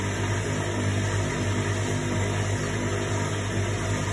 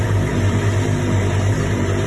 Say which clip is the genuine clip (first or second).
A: first